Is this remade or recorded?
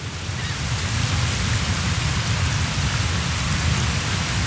recorded